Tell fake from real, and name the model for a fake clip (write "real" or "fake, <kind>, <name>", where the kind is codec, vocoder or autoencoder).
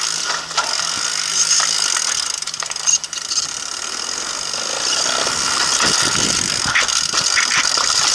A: real